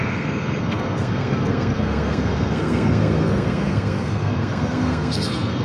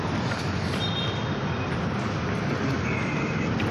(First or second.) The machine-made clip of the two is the first